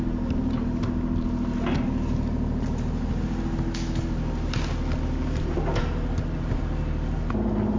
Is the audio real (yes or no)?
yes